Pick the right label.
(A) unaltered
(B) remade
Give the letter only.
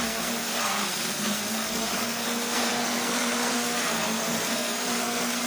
B